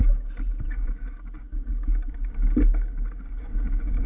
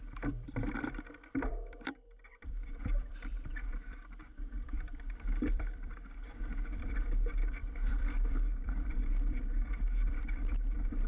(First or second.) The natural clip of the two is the first